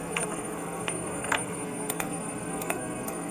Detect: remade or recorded remade